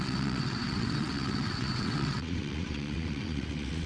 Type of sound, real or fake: fake